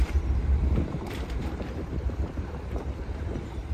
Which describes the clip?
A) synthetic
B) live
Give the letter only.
A